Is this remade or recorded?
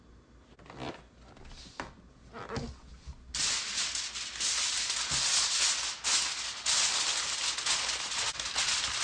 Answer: recorded